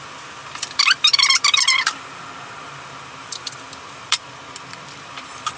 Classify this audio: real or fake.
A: fake